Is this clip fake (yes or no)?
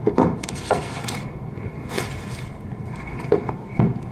yes